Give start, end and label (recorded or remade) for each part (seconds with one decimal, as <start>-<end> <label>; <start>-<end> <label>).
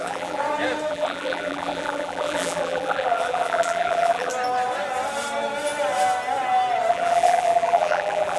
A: 0.0-0.4 remade; 0.4-0.9 recorded; 0.9-4.3 remade; 4.3-6.9 recorded; 6.9-8.4 remade